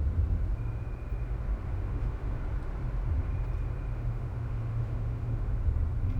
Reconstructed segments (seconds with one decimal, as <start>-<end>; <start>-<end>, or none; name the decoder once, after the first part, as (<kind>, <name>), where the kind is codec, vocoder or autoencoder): 1.7-2.4 (autoencoder, DAC-VAE); 3.9-5.6